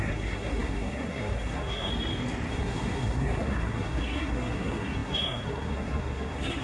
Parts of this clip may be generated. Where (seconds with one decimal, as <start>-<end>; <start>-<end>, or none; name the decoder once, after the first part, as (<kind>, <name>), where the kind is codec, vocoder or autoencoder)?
0.0-1.9 (codec, SNAC); 2.5-6.6